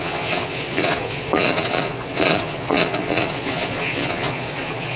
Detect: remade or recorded remade